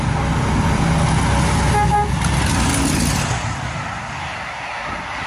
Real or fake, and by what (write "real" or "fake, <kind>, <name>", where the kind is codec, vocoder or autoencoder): real